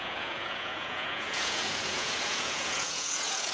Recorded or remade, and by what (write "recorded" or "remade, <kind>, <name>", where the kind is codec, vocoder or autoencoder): remade, vocoder, Vocos